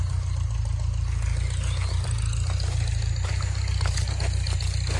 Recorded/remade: recorded